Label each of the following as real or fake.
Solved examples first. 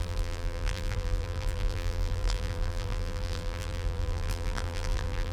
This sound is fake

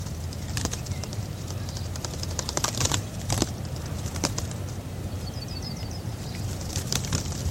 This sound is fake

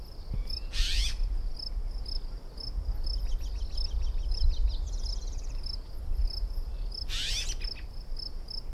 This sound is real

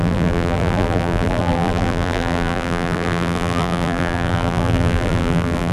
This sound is fake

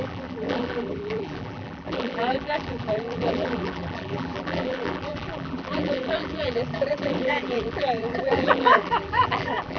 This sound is fake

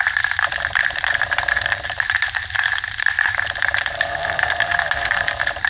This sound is fake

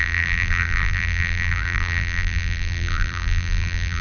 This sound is fake